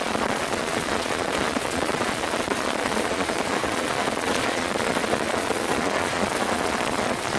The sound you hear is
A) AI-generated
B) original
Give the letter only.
A